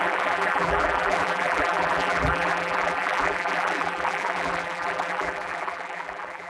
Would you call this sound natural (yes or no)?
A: no